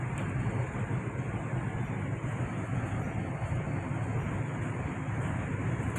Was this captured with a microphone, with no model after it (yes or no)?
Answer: yes